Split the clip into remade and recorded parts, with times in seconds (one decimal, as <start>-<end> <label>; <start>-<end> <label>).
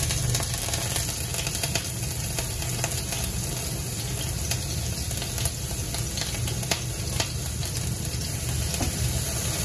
0.0-9.6 recorded